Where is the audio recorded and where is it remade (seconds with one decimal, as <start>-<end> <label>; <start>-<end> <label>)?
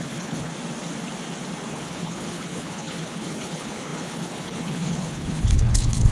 0.0-0.5 remade; 0.5-1.7 recorded; 1.7-6.1 remade